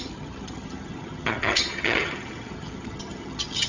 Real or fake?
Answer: fake